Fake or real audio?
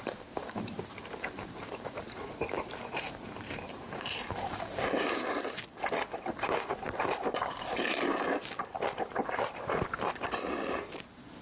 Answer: fake